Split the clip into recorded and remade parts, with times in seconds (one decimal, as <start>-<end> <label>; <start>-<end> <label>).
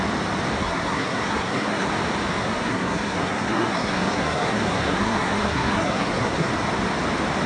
0.0-0.6 recorded; 0.6-1.9 remade; 1.9-2.4 recorded; 2.4-6.5 remade; 6.5-7.5 recorded